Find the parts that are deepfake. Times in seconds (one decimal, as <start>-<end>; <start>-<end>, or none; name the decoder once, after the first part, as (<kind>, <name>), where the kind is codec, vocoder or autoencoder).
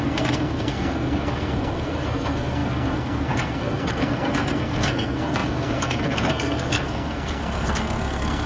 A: 0.0-8.5 (codec, SNAC)